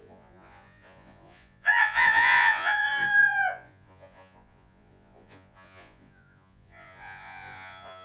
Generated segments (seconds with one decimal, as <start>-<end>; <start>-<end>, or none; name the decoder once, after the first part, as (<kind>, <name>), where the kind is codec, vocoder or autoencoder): 0.0-8.0 (vocoder, Vocos)